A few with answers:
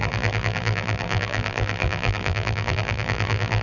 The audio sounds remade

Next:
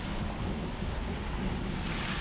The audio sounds recorded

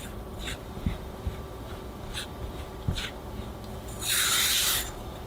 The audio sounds recorded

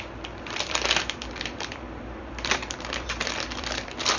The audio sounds remade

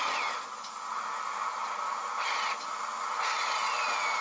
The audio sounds recorded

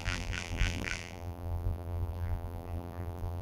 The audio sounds remade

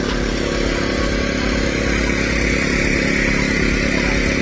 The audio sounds recorded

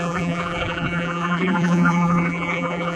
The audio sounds remade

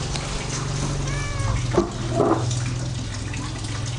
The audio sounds recorded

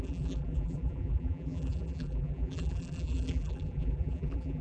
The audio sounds remade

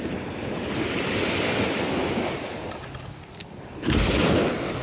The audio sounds recorded